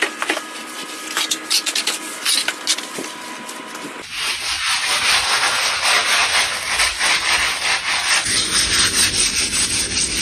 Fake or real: real